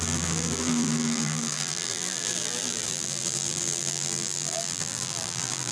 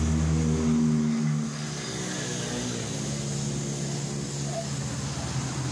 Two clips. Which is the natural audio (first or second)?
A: second